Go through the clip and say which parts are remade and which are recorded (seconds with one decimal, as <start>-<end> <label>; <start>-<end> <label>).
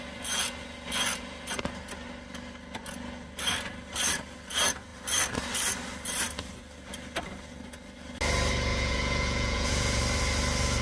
0.0-8.7 recorded; 8.7-10.0 remade; 10.0-10.8 recorded